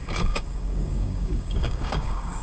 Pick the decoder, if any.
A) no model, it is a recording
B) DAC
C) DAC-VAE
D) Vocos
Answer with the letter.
B